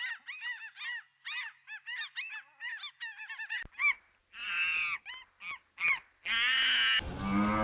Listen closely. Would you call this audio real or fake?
real